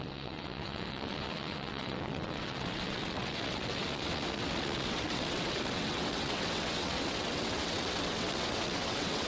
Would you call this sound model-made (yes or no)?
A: yes